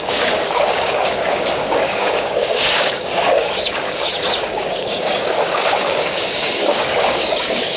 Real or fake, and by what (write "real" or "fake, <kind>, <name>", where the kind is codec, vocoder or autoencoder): fake, codec, DAC